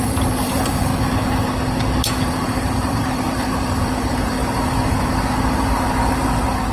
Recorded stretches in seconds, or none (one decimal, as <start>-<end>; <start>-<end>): 0.9-2.2